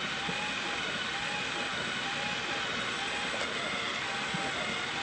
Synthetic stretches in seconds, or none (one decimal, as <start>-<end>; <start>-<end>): none